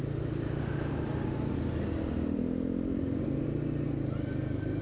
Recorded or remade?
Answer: recorded